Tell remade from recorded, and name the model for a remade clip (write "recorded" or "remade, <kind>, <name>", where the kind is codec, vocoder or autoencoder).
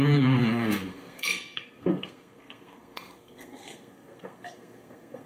remade, codec, SNAC